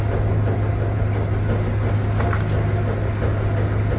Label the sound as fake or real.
real